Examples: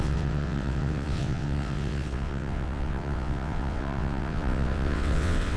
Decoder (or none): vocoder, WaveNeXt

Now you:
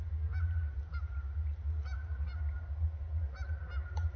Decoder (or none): none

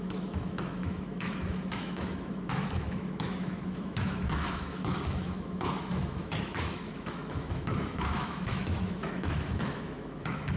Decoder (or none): autoencoder, DAC-VAE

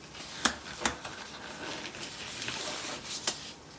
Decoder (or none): none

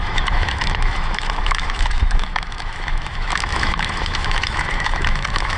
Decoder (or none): autoencoder, DAC-VAE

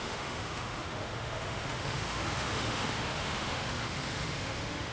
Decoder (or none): autoencoder, DAC-VAE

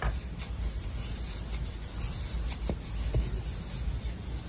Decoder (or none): none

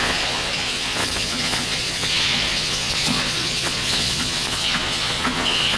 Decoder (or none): vocoder, Vocos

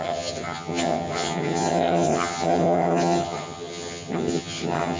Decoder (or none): vocoder, HiFi-GAN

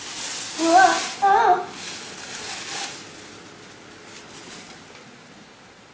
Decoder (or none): none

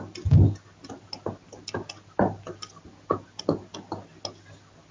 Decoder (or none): none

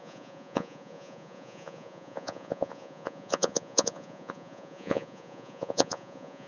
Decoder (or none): vocoder, Vocos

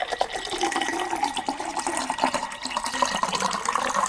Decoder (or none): none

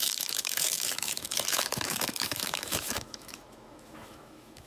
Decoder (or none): autoencoder, DAC-VAE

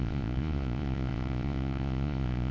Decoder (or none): vocoder, Vocos